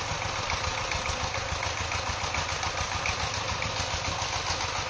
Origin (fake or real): real